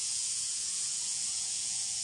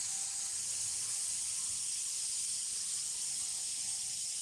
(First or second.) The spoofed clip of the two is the first